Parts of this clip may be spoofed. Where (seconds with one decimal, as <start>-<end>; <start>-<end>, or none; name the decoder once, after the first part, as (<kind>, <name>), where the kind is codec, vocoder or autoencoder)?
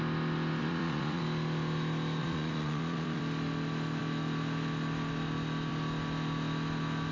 0.6-1.2 (vocoder, Vocos); 2.2-3.2